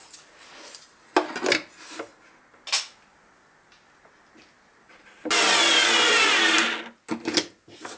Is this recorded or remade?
recorded